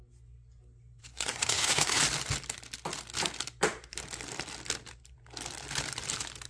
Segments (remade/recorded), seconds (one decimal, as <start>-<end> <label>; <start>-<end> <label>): 0.0-1.0 recorded; 1.0-2.0 remade; 2.0-6.5 recorded